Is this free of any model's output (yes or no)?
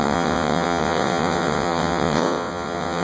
no